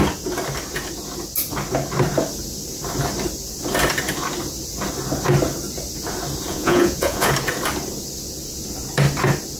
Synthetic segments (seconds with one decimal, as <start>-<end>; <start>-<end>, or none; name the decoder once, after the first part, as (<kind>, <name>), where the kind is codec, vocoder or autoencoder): 6.5-7.3 (vocoder, Vocos)